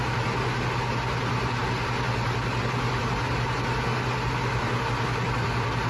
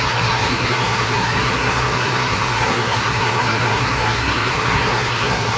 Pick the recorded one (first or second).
first